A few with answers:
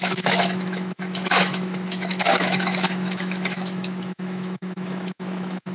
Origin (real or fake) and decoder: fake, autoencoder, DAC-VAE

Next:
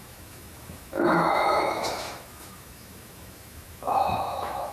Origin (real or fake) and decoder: fake, autoencoder, DAC-VAE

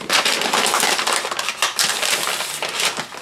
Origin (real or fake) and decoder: real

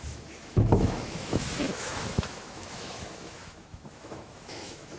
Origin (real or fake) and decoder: fake, autoencoder, DAC-VAE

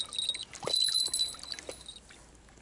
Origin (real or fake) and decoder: real